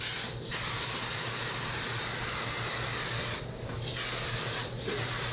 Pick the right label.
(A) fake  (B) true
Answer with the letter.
B